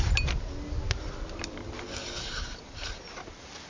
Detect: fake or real real